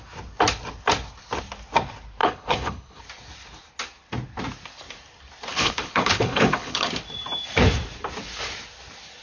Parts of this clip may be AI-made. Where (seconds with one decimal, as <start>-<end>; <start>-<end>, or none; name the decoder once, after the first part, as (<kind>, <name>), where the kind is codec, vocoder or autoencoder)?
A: 2.2-3.0 (codec, HILCodec); 5.5-6.9